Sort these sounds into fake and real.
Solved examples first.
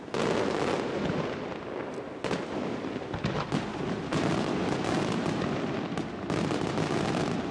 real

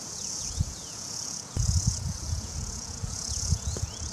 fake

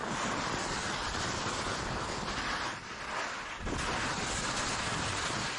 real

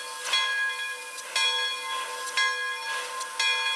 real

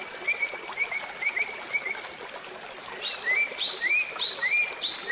real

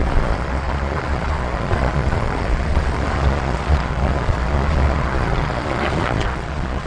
fake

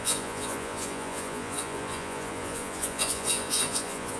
fake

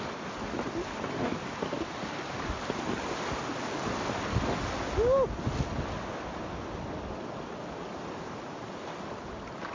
real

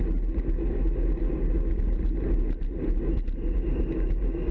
real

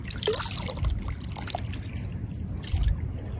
real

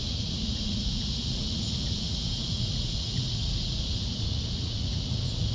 fake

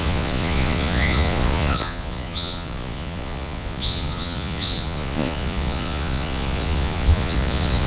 fake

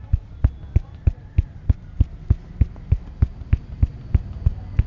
real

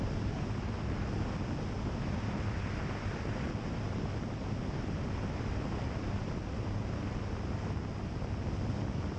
real